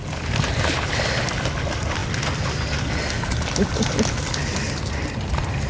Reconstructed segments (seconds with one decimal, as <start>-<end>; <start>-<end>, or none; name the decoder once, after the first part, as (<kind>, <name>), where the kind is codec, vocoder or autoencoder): none